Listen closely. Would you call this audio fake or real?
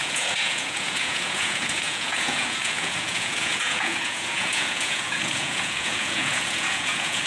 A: fake